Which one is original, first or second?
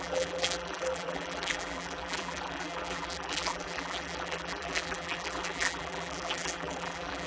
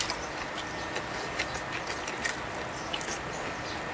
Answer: second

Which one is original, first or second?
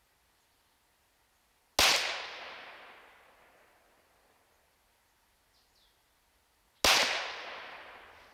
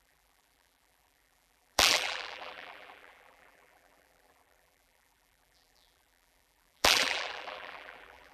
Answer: first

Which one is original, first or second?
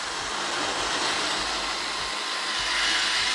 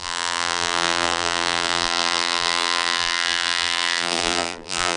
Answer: first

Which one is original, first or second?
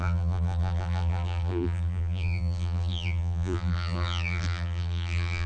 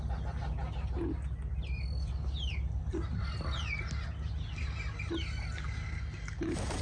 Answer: second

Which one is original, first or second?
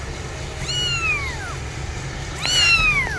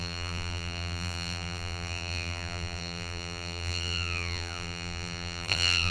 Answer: first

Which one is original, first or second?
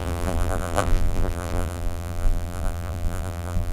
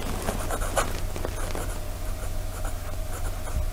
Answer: second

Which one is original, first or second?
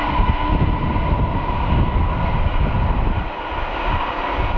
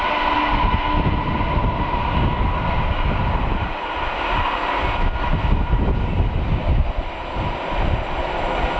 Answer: second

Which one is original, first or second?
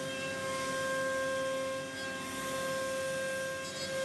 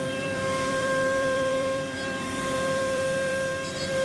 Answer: first